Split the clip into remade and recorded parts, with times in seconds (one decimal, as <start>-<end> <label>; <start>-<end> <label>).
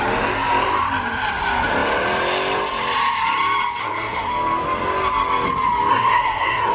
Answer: 0.0-3.8 recorded; 3.8-4.3 remade; 4.3-5.9 recorded; 5.9-6.7 remade